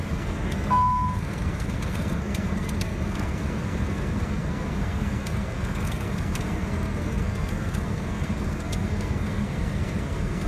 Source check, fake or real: fake